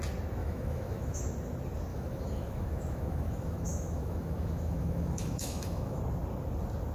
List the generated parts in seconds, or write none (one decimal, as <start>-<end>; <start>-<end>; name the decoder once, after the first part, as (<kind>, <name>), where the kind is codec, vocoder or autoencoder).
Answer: 0.4-1.2 (autoencoder, DAC-VAE); 1.9-6.0